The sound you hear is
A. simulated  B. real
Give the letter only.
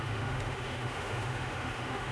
A